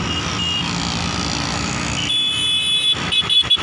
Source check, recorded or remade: recorded